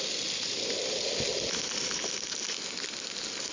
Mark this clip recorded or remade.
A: recorded